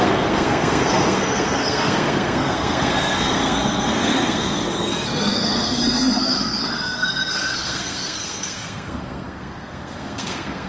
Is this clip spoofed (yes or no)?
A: yes